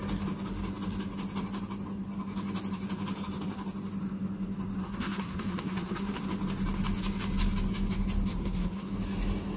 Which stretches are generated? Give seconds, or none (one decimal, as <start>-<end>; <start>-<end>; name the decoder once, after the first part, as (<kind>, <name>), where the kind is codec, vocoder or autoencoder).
4.8-6.2 (codec, SNAC); 8.3-8.9